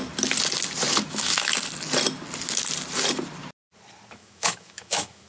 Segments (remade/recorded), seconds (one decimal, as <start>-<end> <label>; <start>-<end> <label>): 0.0-1.1 recorded; 1.1-1.5 remade; 1.5-4.1 recorded; 4.1-5.3 remade